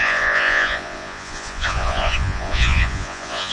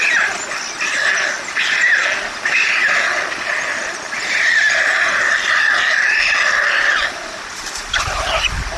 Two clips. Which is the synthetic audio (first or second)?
first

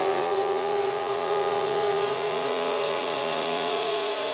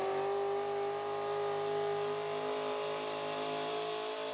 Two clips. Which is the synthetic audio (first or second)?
first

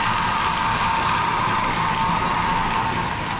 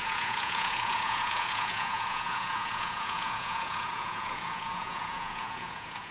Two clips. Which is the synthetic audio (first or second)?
second